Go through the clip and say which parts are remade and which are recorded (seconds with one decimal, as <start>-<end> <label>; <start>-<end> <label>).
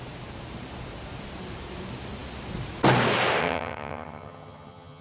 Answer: 0.0-3.4 recorded; 3.4-5.0 remade